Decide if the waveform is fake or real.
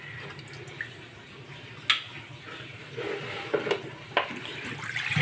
real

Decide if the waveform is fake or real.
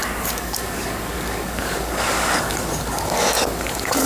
fake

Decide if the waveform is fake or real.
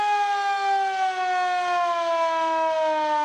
real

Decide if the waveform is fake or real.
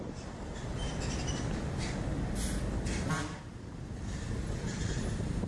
fake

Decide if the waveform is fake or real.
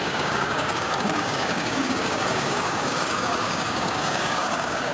fake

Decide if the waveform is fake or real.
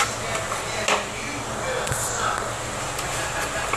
real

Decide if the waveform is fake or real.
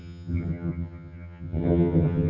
fake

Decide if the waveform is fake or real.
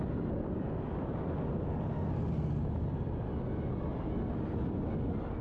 real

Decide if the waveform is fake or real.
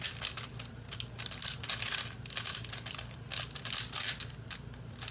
real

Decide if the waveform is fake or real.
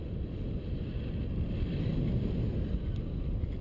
real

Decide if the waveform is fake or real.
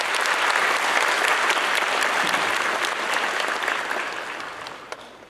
real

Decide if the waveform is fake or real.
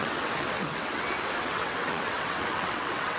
fake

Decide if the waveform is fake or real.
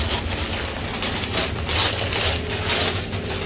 real